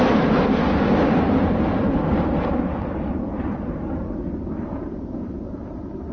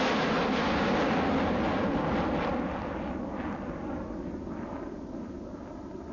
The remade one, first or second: first